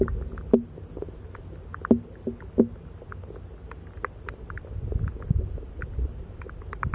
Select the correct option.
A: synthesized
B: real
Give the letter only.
B